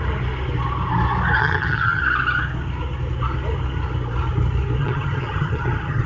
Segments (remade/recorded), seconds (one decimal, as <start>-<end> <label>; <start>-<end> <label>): 0.0-1.4 recorded; 1.4-2.0 remade; 2.0-4.8 recorded; 4.8-6.1 remade